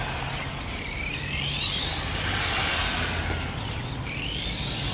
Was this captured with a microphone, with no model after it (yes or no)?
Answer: yes